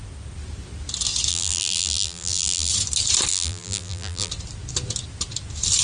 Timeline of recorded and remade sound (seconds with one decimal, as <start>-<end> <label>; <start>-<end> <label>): 0.0-1.3 recorded; 1.3-2.7 remade; 2.7-3.3 recorded; 3.3-4.3 remade; 4.3-5.8 recorded